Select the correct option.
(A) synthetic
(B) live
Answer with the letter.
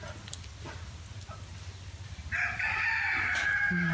B